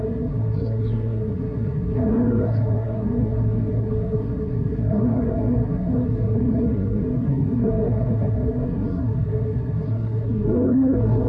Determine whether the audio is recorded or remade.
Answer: remade